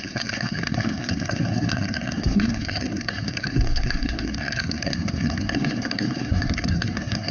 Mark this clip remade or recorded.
remade